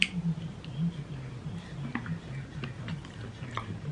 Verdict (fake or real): real